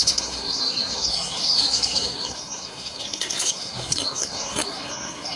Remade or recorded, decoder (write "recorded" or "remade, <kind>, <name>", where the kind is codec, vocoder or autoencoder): remade, codec, SNAC